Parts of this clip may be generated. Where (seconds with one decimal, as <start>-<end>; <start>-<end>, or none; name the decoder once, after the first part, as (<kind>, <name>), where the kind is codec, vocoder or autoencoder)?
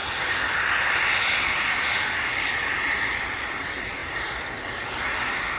none